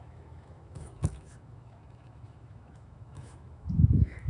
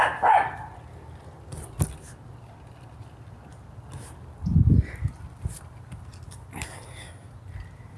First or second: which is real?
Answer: second